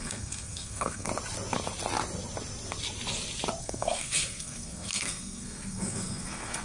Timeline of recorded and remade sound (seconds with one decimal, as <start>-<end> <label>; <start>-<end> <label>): 0.0-1.1 remade; 1.1-3.6 recorded; 3.6-6.6 remade